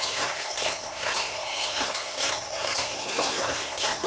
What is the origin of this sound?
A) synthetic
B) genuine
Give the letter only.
A